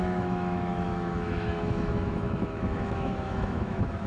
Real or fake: fake